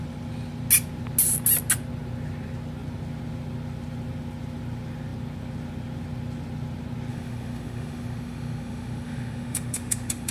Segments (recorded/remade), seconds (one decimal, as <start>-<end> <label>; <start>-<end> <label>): 0.0-7.1 recorded; 7.1-10.3 remade